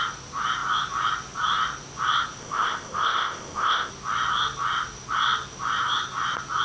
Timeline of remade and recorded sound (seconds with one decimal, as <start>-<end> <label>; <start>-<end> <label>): 0.0-2.4 recorded; 2.4-3.9 remade; 3.9-6.6 recorded